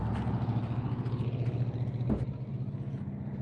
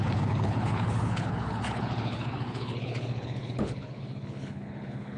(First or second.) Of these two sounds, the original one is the first